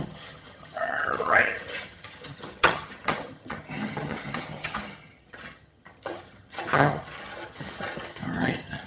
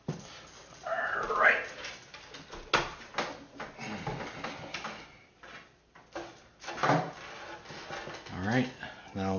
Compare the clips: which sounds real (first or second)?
second